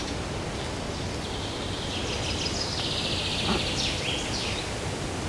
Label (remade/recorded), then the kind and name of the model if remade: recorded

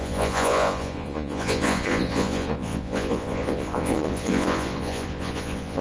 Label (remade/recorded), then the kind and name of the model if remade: remade, vocoder, Vocos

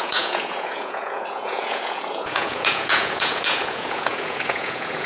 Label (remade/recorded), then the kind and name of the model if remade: remade, vocoder, Vocos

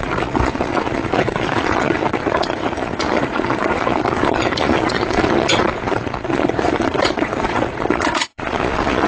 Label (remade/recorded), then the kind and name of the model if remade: remade, vocoder, Vocos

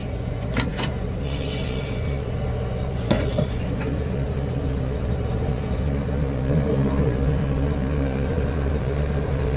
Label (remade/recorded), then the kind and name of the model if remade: remade, vocoder, Vocos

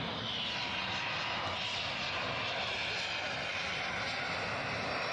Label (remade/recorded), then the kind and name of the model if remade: recorded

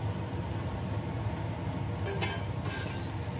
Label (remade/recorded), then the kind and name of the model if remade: recorded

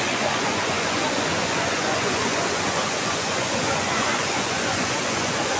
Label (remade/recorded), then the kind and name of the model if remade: remade, vocoder, Vocos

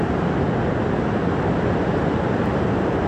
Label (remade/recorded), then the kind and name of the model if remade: recorded